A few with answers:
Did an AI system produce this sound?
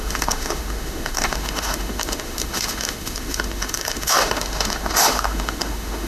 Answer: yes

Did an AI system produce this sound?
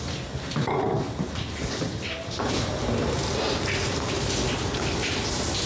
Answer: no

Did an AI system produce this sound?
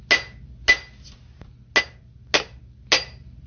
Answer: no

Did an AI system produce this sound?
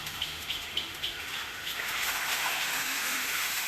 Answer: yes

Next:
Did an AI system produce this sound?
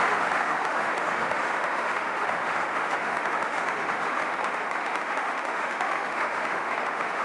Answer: yes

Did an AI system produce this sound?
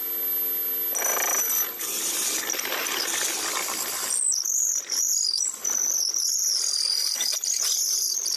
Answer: no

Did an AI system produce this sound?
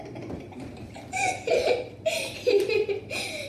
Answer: no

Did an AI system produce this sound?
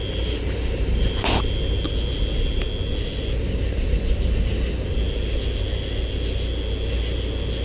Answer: no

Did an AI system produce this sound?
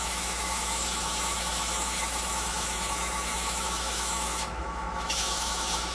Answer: yes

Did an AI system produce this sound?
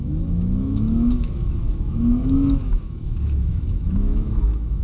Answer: yes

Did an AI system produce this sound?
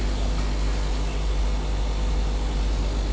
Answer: no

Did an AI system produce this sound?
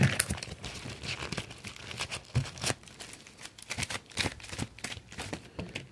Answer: no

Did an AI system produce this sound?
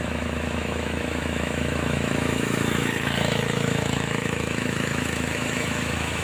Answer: yes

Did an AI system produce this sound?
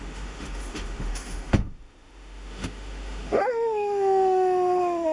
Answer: yes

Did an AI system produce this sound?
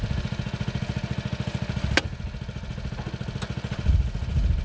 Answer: no